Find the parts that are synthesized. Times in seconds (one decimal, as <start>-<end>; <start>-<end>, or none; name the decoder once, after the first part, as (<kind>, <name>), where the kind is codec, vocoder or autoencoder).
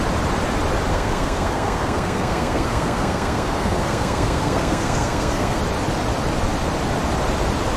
0.9-5.6 (codec, SNAC)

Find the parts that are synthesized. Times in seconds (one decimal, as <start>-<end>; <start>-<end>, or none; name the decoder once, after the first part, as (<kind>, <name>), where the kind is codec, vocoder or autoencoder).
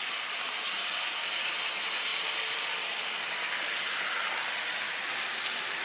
2.1-5.8 (vocoder, BigVGAN v2)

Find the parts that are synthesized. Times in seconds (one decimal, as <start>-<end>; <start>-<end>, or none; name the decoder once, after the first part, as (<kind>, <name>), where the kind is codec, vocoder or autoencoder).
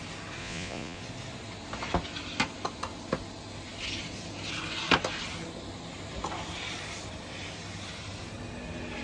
0.4-1.0 (vocoder, Vocos)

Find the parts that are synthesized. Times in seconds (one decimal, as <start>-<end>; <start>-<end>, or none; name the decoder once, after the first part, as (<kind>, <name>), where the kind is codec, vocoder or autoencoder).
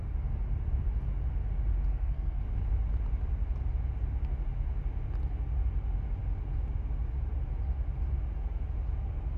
1.9-2.4 (codec, SNAC)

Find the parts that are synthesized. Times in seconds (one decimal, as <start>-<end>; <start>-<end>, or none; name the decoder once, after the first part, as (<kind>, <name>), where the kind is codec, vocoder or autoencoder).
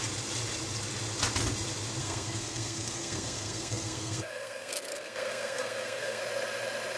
2.0-6.2 (codec, SNAC)